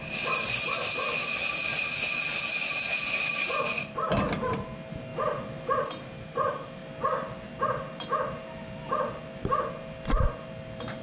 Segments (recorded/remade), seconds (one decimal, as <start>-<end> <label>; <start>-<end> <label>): 0.0-11.0 recorded